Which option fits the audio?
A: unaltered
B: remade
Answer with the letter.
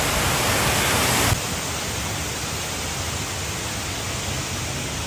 A